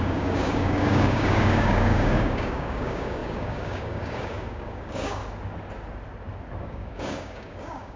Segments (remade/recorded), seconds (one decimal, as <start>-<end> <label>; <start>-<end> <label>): 0.0-5.2 remade; 5.2-6.6 recorded; 6.6-8.0 remade